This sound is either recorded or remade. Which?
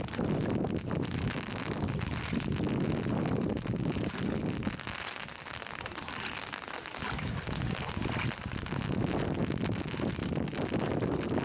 recorded